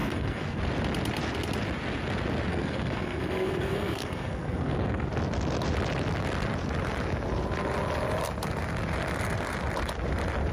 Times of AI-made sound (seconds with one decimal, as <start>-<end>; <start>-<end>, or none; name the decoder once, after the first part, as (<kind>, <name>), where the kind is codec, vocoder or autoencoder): 0.0-0.6 (codec, SNAC); 2.5-5.1